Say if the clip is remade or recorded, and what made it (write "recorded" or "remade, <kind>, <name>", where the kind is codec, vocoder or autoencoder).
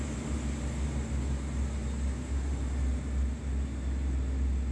recorded